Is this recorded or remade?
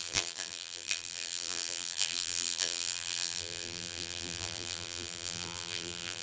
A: remade